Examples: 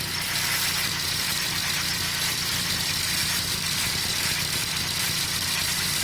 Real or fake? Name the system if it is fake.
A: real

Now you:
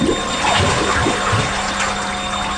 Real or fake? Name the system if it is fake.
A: real